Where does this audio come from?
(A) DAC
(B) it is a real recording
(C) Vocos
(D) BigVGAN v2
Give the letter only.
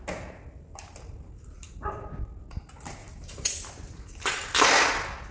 B